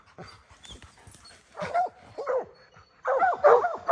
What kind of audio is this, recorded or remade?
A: recorded